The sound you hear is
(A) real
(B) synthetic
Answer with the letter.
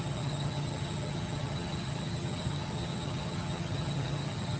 B